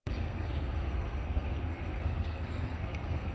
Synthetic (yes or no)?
yes